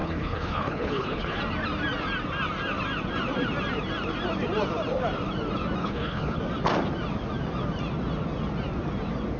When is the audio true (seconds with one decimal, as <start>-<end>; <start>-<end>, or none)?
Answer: 1.4-5.8; 6.4-9.4